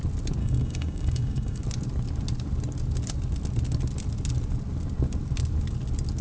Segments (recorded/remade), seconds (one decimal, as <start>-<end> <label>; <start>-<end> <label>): 0.0-0.4 recorded; 0.4-1.6 remade; 1.6-6.2 recorded